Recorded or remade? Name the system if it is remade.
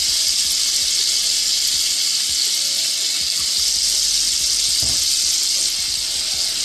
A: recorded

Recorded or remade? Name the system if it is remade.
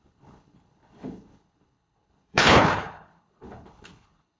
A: remade, codec, HILCodec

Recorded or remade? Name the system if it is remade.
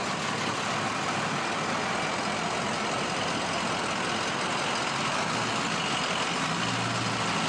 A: recorded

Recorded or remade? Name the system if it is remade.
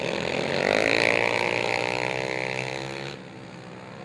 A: recorded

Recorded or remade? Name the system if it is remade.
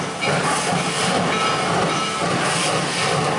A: recorded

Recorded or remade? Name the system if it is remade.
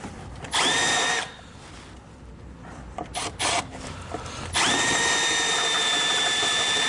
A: recorded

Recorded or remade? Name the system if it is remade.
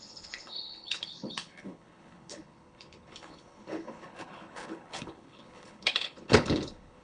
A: remade, codec, HILCodec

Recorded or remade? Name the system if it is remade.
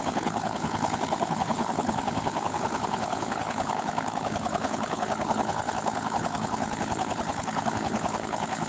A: remade, codec, HILCodec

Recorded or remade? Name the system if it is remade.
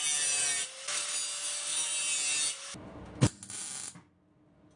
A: recorded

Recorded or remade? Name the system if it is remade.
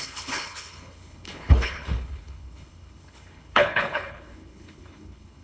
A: remade, codec, HILCodec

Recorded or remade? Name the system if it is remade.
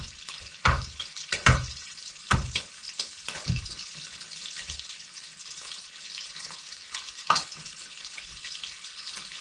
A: remade, codec, HILCodec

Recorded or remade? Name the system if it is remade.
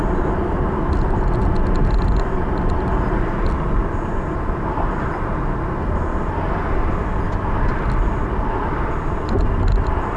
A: recorded